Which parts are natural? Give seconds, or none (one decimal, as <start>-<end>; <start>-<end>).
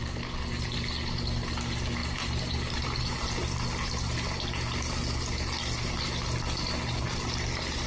0.0-2.0; 3.1-7.9